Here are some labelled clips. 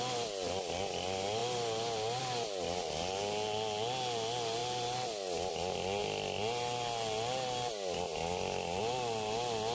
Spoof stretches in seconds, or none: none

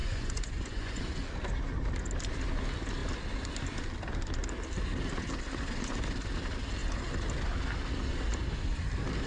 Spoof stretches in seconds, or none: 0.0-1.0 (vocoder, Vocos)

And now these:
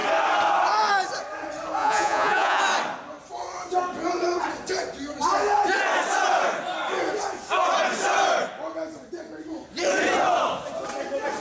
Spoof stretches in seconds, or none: 1.8-2.6 (vocoder, Vocos)